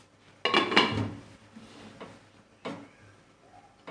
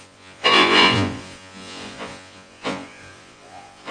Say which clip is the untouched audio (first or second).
first